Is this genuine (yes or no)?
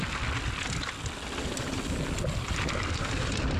yes